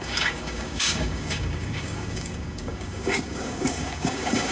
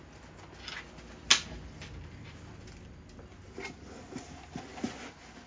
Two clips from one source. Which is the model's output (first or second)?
first